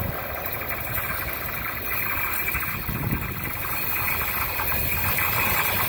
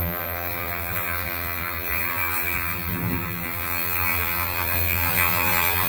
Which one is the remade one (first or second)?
second